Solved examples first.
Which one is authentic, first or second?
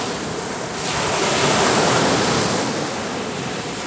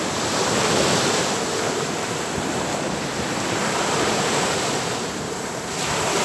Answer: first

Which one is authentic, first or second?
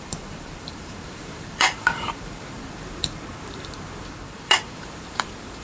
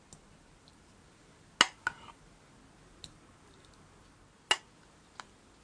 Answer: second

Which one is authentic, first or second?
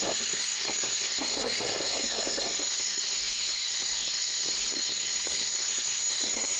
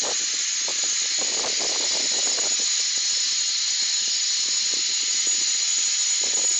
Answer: second